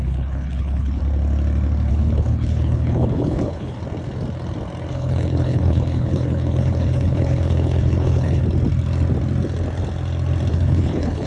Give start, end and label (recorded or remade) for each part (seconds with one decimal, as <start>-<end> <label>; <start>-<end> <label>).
0.0-1.0 remade; 1.0-1.9 recorded; 1.9-3.8 remade; 3.8-4.9 recorded; 4.9-8.4 remade; 8.4-10.5 recorded; 10.5-11.3 remade